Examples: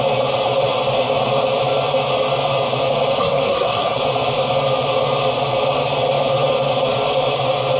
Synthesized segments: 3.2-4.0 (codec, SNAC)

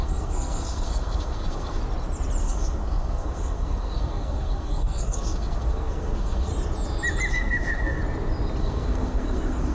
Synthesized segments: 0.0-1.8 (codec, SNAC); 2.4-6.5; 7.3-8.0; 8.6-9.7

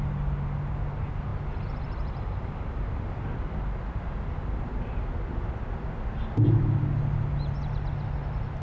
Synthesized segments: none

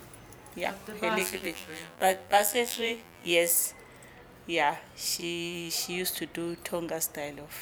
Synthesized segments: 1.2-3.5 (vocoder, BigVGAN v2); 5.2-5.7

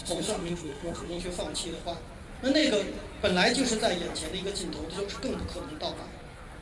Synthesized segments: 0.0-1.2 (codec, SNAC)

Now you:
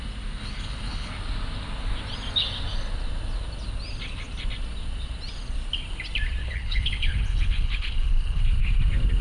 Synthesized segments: 0.4-1.1 (codec, HILCodec); 6.4-8.4